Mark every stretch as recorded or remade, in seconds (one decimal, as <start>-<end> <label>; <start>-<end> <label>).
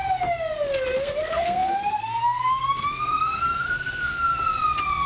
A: 0.0-1.0 recorded; 1.0-4.3 remade; 4.3-5.1 recorded